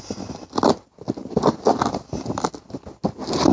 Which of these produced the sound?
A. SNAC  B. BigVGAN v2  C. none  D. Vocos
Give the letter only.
C